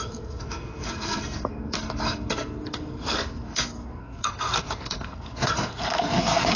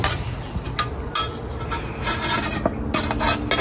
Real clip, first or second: second